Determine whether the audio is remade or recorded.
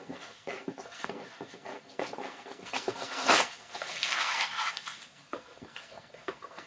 remade